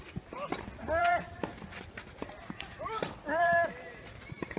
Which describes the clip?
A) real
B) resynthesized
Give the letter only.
B